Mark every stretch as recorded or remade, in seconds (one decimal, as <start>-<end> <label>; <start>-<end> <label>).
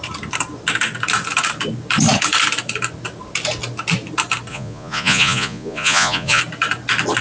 0.0-4.5 recorded; 4.5-6.4 remade; 6.4-7.2 recorded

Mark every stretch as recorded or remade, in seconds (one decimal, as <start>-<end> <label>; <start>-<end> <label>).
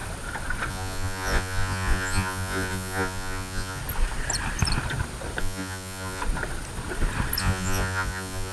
0.0-0.7 recorded; 0.7-3.8 remade; 3.8-5.4 recorded; 5.4-6.2 remade; 6.2-7.4 recorded; 7.4-8.5 remade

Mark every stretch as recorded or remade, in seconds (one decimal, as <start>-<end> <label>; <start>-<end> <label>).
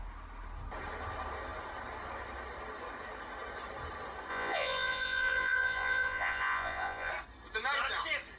0.0-4.3 recorded; 4.3-7.1 remade; 7.1-8.4 recorded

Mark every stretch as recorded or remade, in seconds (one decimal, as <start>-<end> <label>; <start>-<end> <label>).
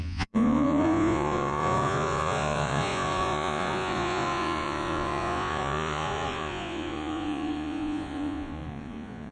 0.0-9.3 remade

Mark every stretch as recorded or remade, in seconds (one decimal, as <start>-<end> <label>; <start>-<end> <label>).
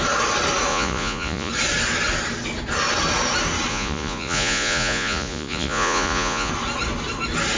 0.0-0.7 recorded; 0.7-1.5 remade; 1.5-3.7 recorded; 3.7-6.5 remade; 6.5-7.6 recorded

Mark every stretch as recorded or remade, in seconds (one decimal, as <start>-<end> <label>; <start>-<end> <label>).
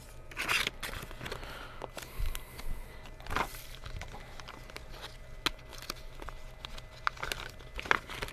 0.0-8.3 recorded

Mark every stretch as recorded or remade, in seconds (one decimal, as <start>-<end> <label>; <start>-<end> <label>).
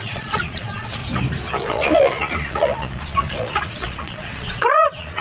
0.0-1.0 remade; 1.0-1.5 recorded; 1.5-5.2 remade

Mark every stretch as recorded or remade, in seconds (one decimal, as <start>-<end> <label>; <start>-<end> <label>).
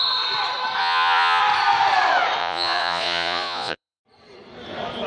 0.0-0.8 recorded; 0.8-1.4 remade; 1.4-2.4 recorded; 2.4-4.0 remade; 4.0-5.1 recorded